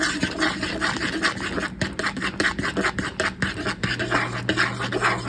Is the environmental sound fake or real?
real